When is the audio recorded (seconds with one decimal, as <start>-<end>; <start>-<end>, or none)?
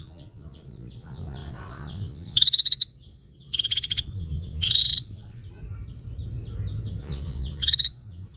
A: 5.4-7.0